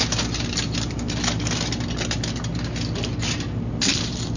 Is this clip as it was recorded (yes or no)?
yes